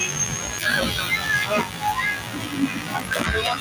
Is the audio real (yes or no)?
no